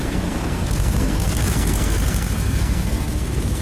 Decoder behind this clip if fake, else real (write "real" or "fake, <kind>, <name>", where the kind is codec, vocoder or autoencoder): fake, codec, SNAC